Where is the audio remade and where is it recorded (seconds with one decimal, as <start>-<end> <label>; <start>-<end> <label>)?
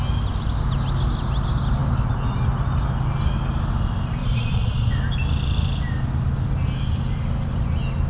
0.0-4.2 recorded; 4.2-4.9 remade; 4.9-8.1 recorded